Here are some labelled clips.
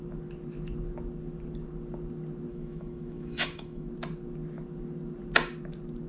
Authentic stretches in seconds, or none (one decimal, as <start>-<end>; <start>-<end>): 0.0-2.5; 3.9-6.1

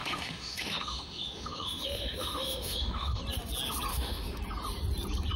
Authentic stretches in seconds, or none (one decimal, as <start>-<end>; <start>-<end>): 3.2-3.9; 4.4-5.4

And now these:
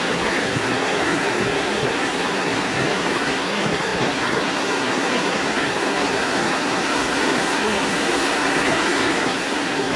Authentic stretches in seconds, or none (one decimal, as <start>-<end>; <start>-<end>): none

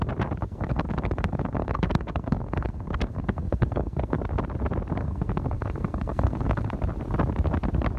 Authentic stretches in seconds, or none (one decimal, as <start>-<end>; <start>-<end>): 0.0-0.4; 4.2-5.0; 6.7-8.0

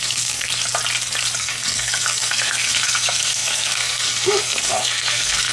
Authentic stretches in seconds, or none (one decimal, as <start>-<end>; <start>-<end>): 0.5-1.4

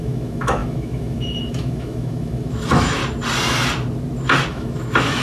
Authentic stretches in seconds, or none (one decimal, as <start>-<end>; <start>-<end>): 3.0-4.5